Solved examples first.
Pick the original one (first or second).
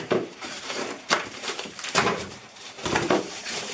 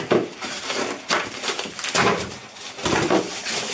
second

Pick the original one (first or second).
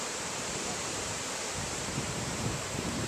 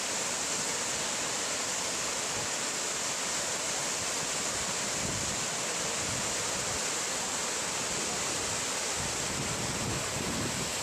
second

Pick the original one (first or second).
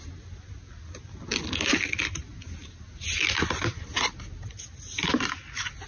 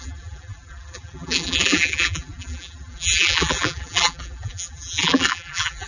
first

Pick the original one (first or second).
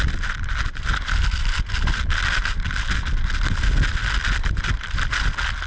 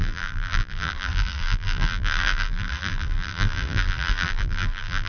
first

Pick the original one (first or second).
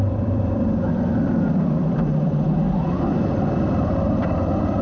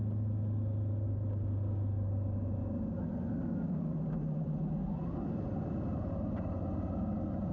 second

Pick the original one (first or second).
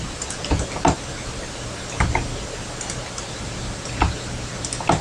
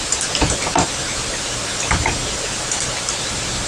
first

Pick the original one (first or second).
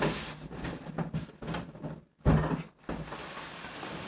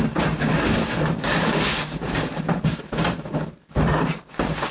first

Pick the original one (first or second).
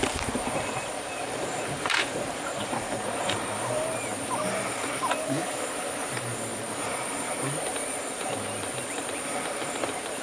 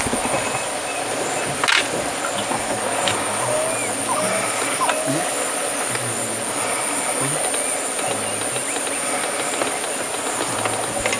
second